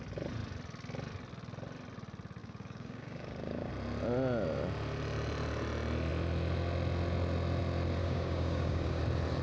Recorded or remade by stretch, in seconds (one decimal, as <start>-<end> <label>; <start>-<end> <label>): 0.0-2.4 recorded; 2.4-3.7 remade; 3.7-8.0 recorded; 8.0-9.0 remade; 9.0-9.4 recorded

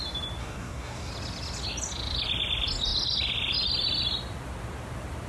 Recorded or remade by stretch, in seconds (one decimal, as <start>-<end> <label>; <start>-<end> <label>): 0.0-0.4 recorded; 0.4-1.1 remade; 1.1-5.3 recorded

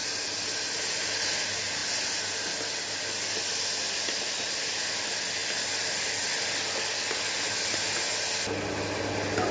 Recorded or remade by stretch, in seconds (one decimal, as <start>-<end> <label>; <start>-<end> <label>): 0.0-9.5 recorded